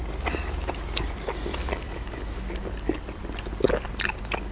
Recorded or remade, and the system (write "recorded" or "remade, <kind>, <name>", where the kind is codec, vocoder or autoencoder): recorded